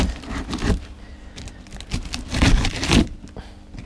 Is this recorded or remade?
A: recorded